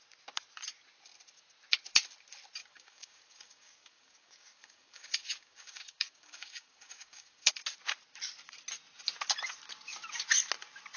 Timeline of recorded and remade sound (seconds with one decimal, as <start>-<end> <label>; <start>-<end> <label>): 0.0-2.6 recorded; 2.6-7.5 remade; 7.5-11.0 recorded